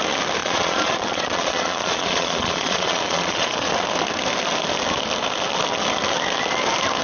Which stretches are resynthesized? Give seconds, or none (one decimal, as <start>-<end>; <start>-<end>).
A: 0.4-3.7